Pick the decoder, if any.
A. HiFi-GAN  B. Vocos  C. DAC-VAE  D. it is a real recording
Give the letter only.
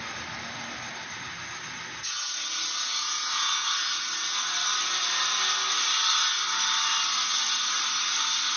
D